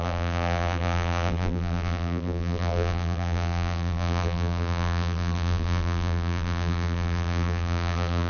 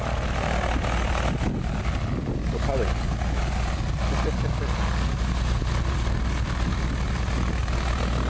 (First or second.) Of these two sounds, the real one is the second